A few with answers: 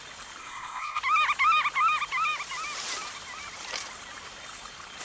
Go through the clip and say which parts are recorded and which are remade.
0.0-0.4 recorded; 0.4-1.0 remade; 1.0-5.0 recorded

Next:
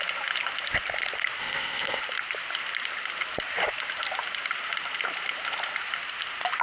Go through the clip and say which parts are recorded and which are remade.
0.0-1.4 recorded; 1.4-2.0 remade; 2.0-6.6 recorded

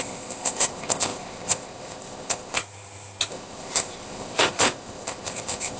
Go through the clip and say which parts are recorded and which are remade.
0.0-2.6 remade; 2.6-3.3 recorded; 3.3-5.8 remade

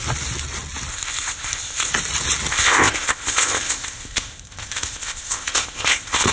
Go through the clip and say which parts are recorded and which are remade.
0.0-0.9 recorded; 0.9-1.9 remade; 1.9-2.5 recorded; 2.5-6.3 remade

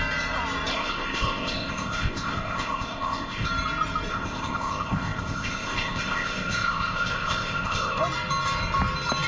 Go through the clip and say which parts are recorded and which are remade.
0.0-0.7 recorded; 0.7-3.5 remade; 3.5-4.1 recorded; 4.1-8.0 remade; 8.0-9.3 recorded